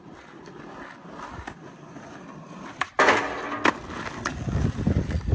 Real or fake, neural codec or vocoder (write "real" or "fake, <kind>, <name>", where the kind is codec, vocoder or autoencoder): real